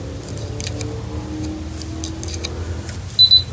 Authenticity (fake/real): real